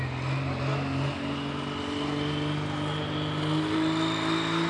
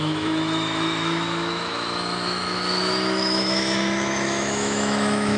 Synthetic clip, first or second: second